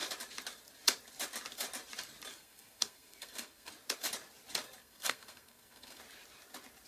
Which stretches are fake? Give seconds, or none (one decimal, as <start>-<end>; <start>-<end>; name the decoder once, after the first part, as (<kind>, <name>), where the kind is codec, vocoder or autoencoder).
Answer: 2.3-3.7 (codec, SNAC); 4.8-6.0